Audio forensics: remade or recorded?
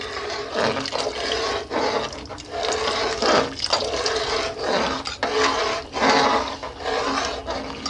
recorded